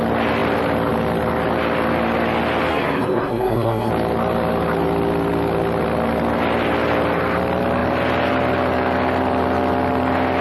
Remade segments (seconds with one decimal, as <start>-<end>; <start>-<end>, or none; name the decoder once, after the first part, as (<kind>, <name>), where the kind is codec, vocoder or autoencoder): 2.7-3.9 (codec, SNAC)